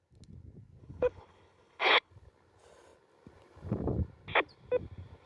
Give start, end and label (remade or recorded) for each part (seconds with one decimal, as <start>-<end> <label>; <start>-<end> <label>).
0.0-0.8 recorded; 0.8-2.1 remade; 2.1-5.3 recorded